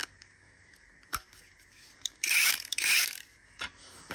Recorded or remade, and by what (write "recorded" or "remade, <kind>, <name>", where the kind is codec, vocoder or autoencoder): remade, codec, DAC